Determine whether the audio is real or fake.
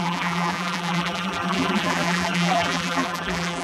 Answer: fake